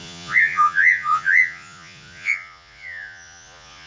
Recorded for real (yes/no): no